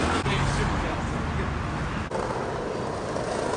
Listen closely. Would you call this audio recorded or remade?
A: recorded